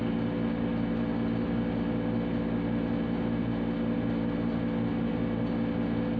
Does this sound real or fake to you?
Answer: real